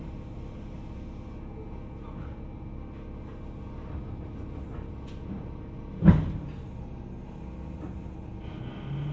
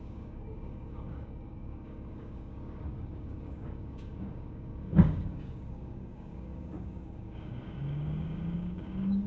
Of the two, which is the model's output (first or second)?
second